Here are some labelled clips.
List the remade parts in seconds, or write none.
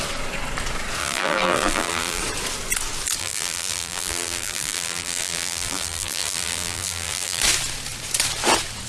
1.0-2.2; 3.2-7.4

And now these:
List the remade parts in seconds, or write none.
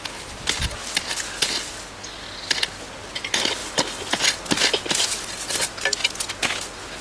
none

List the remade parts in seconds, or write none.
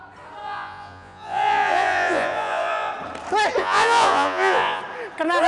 0.4-2.9; 3.6-4.8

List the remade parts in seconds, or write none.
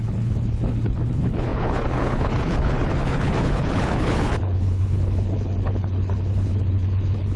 0.0-7.4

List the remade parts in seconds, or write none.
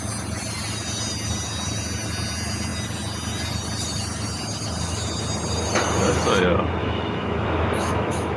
6.8-8.4